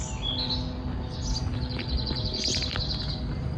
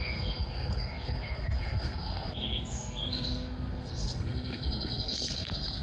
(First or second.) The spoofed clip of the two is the second